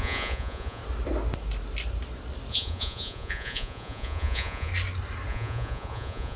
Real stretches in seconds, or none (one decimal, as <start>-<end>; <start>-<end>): 0.8-2.5; 4.7-5.3